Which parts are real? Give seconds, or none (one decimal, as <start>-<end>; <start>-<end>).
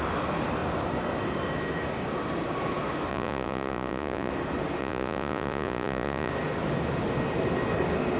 0.0-3.1; 4.3-4.8; 6.3-8.2